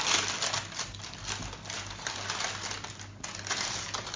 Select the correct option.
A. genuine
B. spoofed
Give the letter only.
A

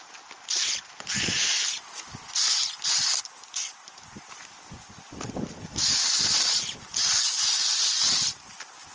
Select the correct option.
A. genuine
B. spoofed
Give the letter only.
A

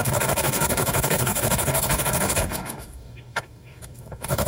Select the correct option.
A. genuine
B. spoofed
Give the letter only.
B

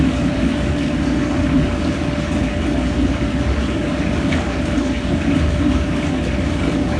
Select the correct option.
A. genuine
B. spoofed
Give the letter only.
B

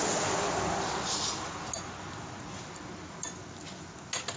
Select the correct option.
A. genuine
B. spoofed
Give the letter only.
A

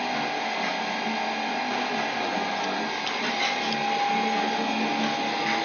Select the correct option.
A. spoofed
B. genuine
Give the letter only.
B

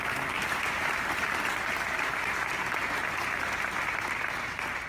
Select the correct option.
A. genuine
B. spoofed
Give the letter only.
A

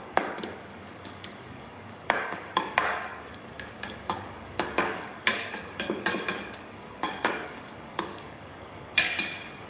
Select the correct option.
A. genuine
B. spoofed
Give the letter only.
B